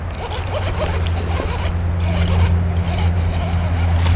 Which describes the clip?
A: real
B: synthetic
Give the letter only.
A